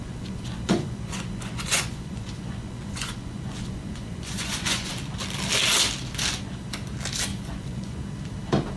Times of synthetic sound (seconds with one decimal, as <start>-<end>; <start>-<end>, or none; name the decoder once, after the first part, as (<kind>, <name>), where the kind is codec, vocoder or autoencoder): 0.0-4.9 (vocoder, Vocos); 7.3-8.0